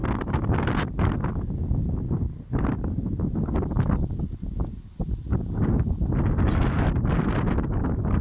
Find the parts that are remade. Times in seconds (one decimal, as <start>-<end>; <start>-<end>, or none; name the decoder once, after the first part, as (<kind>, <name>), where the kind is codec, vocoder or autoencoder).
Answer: none